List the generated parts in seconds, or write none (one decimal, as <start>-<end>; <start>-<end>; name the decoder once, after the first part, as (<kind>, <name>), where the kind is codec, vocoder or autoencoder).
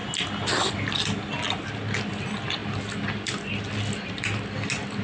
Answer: none